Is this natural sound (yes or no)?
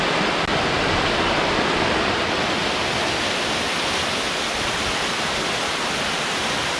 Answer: yes